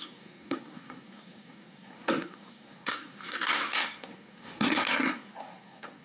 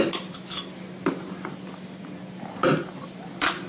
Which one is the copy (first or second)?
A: first